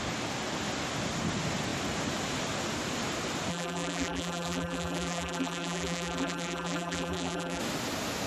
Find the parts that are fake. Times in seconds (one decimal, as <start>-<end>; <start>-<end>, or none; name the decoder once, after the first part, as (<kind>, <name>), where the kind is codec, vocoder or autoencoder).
3.5-7.6 (vocoder, BigVGAN v2)